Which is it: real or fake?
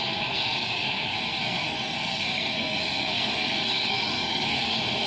fake